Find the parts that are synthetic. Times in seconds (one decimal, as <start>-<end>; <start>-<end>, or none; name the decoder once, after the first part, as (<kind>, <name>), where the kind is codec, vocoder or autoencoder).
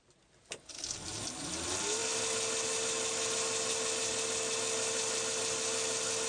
none